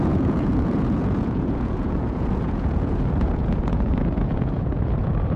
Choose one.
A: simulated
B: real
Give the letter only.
A